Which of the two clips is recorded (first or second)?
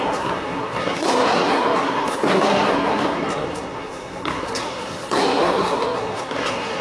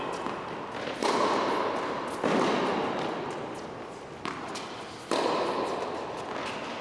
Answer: second